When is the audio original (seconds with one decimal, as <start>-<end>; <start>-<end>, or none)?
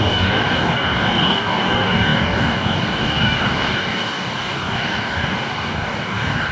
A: none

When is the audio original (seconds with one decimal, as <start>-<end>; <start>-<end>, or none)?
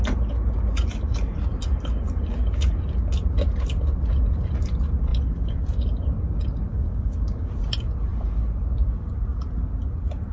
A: 0.0-6.7; 7.5-10.3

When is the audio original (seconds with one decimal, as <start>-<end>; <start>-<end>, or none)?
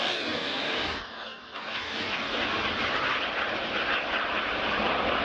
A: 2.4-5.2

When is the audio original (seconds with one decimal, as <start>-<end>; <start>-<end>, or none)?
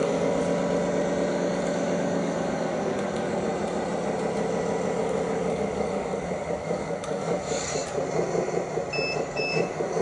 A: 0.4-1.3; 3.5-5.0; 7.7-9.2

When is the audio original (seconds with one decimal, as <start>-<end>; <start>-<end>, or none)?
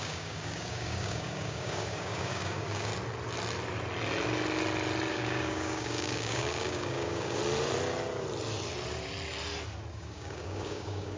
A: 2.9-5.1; 7.4-9.9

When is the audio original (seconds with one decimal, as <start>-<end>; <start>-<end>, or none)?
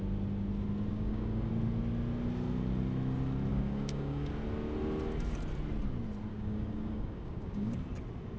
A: 0.0-0.9; 1.5-3.5; 4.3-6.3; 7.8-8.4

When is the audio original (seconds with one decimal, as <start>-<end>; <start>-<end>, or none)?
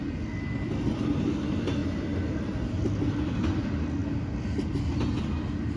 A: 0.0-5.8